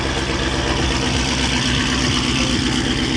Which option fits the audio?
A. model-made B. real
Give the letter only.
B